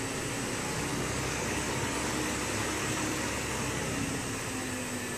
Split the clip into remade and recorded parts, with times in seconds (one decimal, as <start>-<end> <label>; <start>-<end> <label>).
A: 0.0-0.9 recorded; 0.9-2.4 remade; 2.4-2.8 recorded; 2.8-3.8 remade; 3.8-5.2 recorded